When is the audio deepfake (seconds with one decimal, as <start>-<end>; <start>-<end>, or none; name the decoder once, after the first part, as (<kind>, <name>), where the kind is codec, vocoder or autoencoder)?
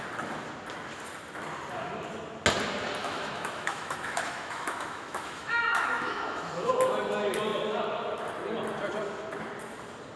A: 3.0-6.7 (autoencoder, DAC-VAE)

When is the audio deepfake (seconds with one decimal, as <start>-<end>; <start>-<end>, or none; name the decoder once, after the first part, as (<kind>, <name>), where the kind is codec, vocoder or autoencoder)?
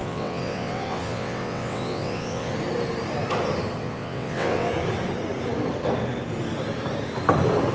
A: 0.0-2.5 (vocoder, WaveNeXt); 3.8-4.7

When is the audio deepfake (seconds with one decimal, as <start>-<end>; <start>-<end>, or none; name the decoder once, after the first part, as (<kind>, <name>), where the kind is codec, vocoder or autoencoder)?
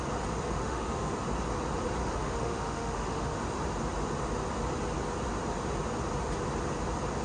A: 0.6-1.1 (autoencoder, DAC-VAE); 2.0-3.4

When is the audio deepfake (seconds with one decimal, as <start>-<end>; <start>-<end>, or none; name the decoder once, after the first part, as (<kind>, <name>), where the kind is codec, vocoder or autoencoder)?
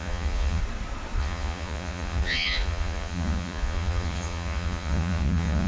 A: 0.0-0.6 (vocoder, Vocos); 1.2-5.7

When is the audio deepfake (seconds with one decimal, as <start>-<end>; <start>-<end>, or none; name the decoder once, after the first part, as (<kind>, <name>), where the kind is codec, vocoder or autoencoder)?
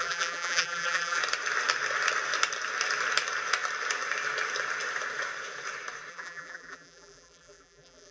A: 0.0-1.2 (vocoder, BigVGAN v2); 6.1-8.1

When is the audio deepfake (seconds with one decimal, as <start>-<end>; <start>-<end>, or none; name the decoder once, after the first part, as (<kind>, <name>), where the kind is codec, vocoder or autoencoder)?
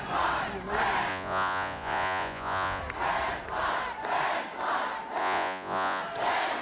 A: 1.1-2.8 (vocoder, Vocos); 5.2-6.0